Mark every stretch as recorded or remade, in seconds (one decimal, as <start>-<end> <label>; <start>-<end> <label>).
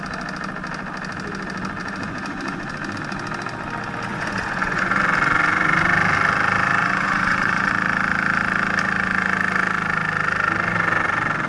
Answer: 0.0-1.8 recorded; 1.8-2.7 remade; 2.7-4.1 recorded; 4.1-5.0 remade; 5.0-6.8 recorded; 6.8-7.7 remade; 7.7-11.5 recorded